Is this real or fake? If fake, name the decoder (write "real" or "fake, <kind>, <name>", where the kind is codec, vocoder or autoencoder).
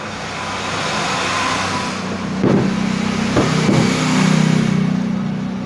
real